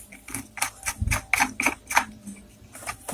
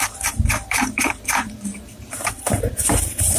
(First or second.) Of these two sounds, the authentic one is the first